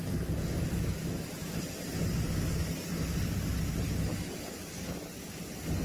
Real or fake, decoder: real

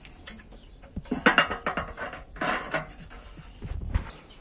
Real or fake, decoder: real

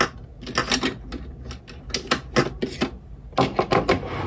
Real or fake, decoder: real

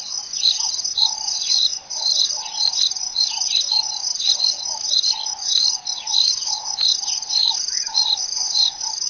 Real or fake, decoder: fake, vocoder, Vocos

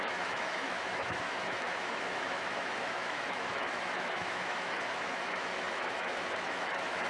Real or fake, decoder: fake, autoencoder, DAC-VAE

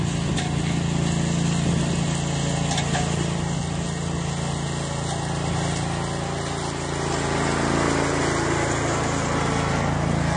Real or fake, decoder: real